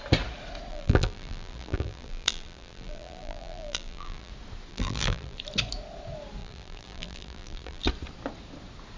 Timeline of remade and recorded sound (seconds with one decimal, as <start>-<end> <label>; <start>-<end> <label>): 0.0-0.7 recorded; 0.7-4.3 remade; 4.3-4.7 recorded; 4.7-5.4 remade; 5.4-6.4 recorded; 6.4-7.8 remade; 7.8-9.0 recorded